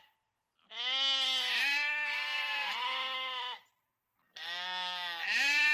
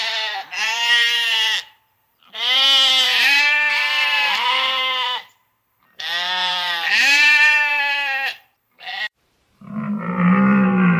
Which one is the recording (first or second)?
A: first